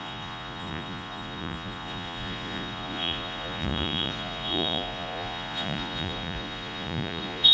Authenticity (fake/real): fake